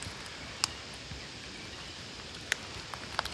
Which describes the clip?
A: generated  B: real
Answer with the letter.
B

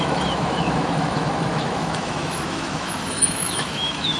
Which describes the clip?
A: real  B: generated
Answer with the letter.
B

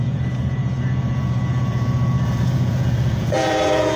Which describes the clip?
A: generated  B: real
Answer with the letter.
A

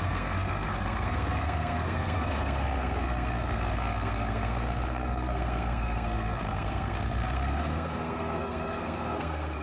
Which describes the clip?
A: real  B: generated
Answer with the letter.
B